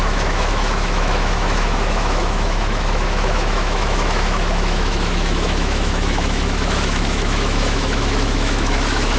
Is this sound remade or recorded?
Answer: remade